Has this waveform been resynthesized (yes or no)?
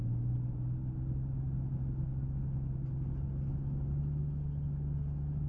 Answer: no